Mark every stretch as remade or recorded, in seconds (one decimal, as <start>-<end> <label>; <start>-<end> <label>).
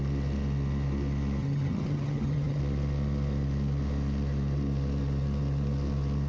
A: 0.0-1.4 recorded; 1.4-2.6 remade; 2.6-6.3 recorded